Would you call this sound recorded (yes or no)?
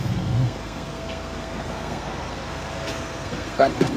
no